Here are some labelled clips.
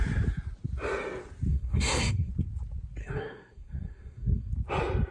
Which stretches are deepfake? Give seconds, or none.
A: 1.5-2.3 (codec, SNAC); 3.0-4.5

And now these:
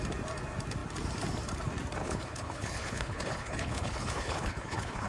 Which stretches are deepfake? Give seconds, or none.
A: 2.0-5.1 (codec, HILCodec)

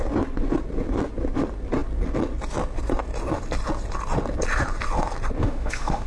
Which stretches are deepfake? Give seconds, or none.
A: 5.4-6.1 (autoencoder, DAC-VAE)

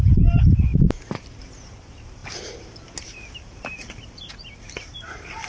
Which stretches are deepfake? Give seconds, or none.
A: 0.0-2.2 (vocoder, BigVGAN v2); 4.3-5.5

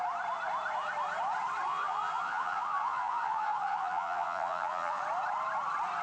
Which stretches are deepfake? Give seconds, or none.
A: 1.7-5.0 (vocoder, Vocos)

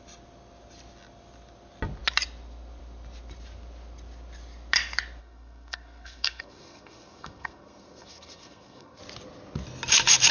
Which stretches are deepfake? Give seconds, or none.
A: 5.2-9.0 (codec, SNAC)